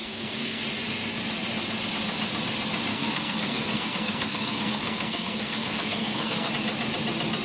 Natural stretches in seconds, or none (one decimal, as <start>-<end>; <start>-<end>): 0.6-2.9; 6.5-7.4